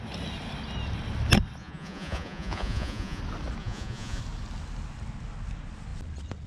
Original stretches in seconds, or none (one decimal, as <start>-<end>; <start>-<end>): 0.0-1.6; 3.2-3.6; 4.2-6.5